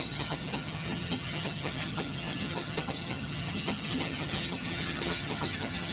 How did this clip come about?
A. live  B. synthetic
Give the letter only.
B